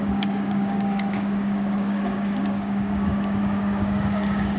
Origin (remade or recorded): remade